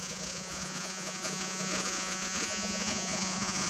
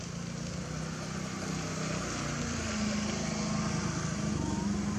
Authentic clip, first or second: second